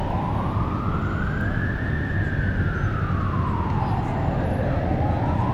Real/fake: real